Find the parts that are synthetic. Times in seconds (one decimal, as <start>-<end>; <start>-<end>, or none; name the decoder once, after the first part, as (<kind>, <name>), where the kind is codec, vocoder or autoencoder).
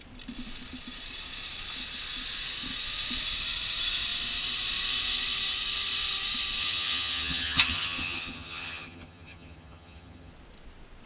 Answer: 6.6-10.3 (vocoder, HiFi-GAN)